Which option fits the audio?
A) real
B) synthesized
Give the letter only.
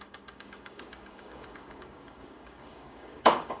B